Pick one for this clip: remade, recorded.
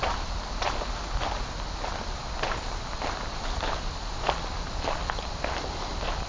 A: recorded